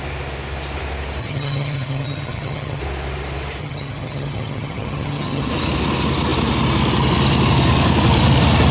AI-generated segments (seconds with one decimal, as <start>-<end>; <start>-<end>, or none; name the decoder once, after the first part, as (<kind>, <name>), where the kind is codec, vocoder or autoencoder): 1.2-2.8 (vocoder, HiFi-GAN); 3.6-5.5